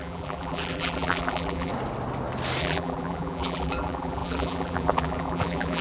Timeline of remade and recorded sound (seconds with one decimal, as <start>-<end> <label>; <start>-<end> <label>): 0.0-1.7 remade; 1.7-2.6 recorded; 2.6-5.8 remade